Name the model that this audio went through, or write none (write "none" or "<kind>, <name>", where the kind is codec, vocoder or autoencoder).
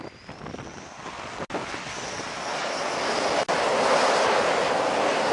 none